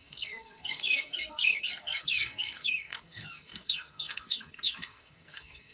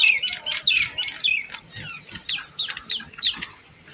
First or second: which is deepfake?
first